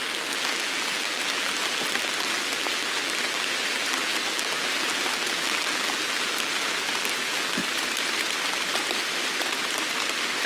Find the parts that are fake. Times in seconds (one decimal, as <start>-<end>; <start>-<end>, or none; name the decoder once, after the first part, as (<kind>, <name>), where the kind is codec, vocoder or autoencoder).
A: 0.0-7.6 (vocoder, BigVGAN v2)